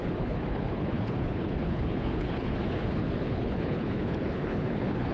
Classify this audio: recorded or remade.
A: remade